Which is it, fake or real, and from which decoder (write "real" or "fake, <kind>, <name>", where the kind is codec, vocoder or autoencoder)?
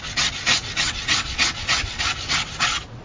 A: fake, vocoder, WaveNeXt